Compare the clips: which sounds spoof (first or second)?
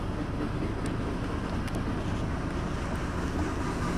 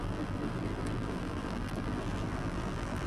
second